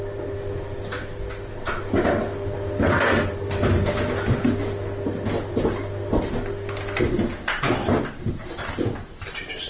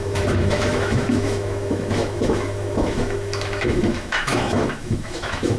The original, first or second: first